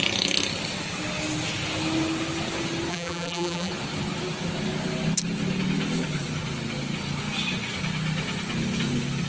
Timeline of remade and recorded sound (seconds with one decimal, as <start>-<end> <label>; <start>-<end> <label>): 0.0-2.9 recorded; 2.9-3.7 remade; 3.7-9.3 recorded